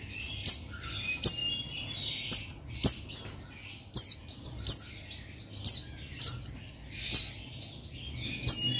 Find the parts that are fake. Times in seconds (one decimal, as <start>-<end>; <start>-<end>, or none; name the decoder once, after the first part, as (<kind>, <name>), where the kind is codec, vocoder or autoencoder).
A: none